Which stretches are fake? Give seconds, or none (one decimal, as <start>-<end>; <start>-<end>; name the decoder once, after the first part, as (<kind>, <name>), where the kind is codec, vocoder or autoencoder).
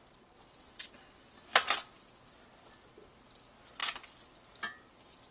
none